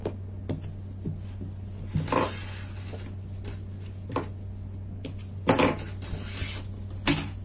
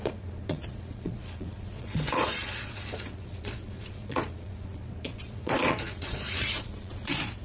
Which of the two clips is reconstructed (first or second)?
second